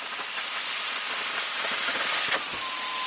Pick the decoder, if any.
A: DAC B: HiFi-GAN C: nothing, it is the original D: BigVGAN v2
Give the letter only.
C